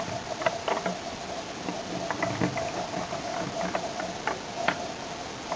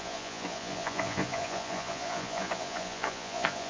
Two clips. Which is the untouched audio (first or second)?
first